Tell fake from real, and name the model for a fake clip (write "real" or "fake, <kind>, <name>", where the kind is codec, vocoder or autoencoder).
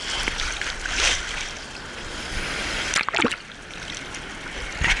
real